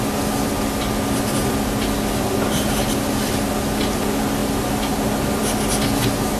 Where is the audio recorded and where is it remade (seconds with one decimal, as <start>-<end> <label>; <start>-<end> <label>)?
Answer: 0.0-6.4 recorded